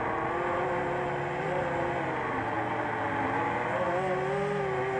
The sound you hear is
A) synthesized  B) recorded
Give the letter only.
B